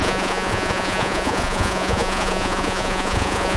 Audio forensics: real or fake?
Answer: fake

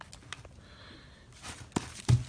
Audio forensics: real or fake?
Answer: real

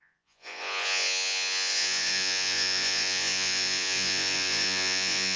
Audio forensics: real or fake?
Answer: fake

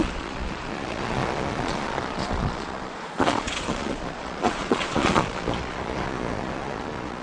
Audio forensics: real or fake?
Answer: fake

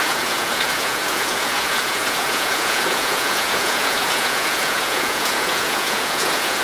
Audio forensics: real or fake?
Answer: fake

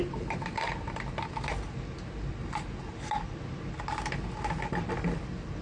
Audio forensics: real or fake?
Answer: real